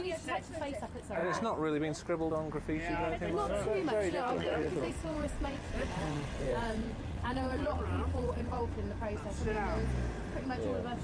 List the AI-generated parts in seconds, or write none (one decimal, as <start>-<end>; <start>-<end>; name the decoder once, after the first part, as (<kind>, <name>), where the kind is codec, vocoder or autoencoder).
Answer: 4.3-8.6 (vocoder, WaveNeXt)